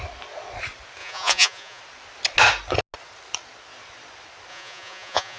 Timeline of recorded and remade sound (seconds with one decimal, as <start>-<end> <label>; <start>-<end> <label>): 0.0-1.0 recorded; 1.0-1.8 remade; 1.8-4.5 recorded; 4.5-5.4 remade